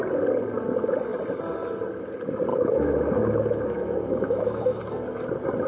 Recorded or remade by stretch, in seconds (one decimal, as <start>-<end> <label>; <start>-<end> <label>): 0.0-2.5 recorded; 2.5-4.8 remade; 4.8-5.7 recorded